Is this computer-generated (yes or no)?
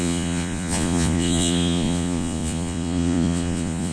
yes